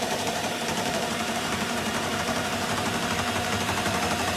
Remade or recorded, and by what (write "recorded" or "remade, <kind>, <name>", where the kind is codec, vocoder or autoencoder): remade, vocoder, BigVGAN v2